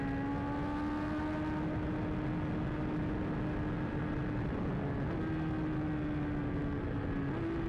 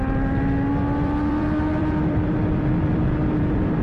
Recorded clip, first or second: first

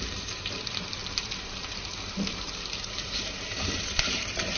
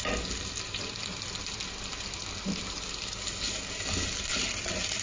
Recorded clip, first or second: second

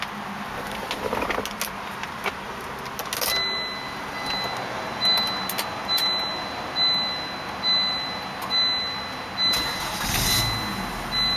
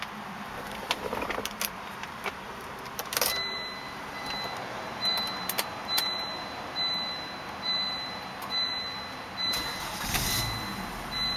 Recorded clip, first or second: first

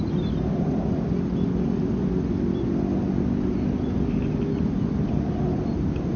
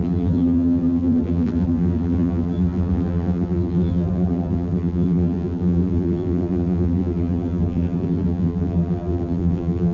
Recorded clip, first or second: first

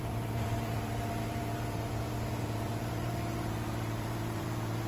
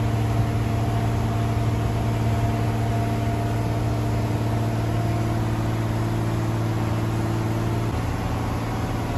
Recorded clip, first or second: second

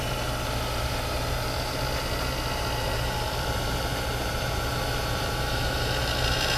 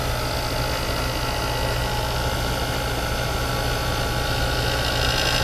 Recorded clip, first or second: second